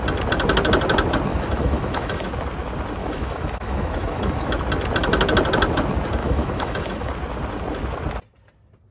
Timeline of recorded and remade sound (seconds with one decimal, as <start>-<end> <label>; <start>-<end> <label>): 0.0-1.3 recorded; 1.3-2.3 remade; 2.3-3.0 recorded; 3.0-4.5 remade; 4.5-6.2 recorded; 6.2-7.1 remade; 7.1-8.9 recorded